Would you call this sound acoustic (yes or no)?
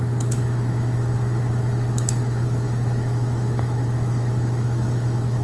no